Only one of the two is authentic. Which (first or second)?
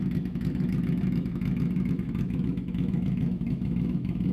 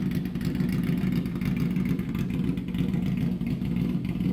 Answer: second